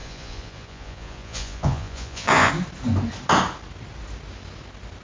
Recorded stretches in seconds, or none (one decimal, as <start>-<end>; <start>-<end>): 2.5-5.0